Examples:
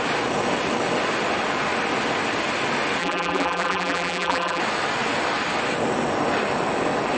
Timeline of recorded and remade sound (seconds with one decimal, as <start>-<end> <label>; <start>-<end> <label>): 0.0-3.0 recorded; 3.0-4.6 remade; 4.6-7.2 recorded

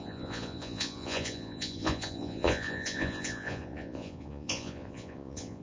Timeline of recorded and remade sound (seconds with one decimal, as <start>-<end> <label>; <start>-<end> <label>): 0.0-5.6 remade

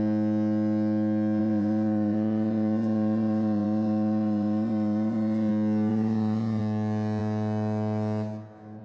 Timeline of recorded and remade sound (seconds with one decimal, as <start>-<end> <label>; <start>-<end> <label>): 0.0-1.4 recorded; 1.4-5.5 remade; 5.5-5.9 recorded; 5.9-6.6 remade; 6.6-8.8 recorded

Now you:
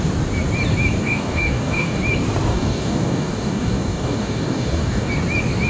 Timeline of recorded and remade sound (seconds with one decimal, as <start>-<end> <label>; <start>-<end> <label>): 0.0-1.0 recorded; 1.0-2.0 remade; 2.0-2.5 recorded; 2.5-5.1 remade; 5.1-5.7 recorded

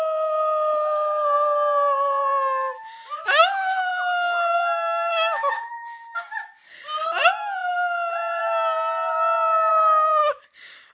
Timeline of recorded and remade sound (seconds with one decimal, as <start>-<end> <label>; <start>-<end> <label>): 0.0-3.2 recorded; 3.2-3.9 remade; 3.9-5.1 recorded; 5.1-5.7 remade; 5.7-9.7 recorded; 9.7-10.4 remade; 10.4-10.9 recorded